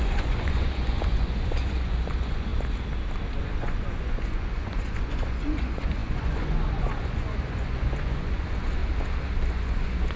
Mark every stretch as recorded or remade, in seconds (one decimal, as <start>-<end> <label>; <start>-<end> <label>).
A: 0.0-2.5 remade; 2.5-3.4 recorded; 3.4-8.8 remade; 8.8-9.5 recorded; 9.5-10.2 remade